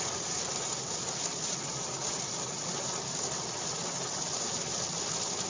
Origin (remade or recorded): recorded